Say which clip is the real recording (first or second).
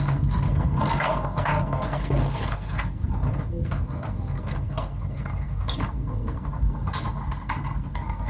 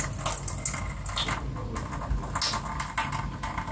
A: second